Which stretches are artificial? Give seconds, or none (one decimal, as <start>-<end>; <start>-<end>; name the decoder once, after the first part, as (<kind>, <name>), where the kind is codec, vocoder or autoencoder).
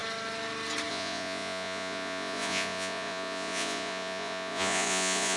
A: 0.9-5.4 (vocoder, Vocos)